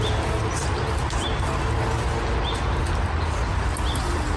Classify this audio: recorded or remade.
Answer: recorded